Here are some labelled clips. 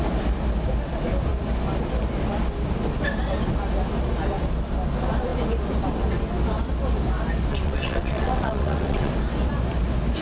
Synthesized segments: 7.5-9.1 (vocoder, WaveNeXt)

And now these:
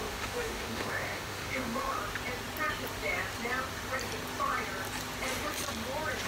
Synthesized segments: 0.0-2.0 (autoencoder, DAC-VAE)